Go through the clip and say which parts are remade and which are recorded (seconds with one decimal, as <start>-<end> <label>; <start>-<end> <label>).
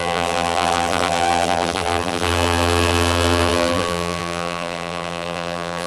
0.0-5.9 remade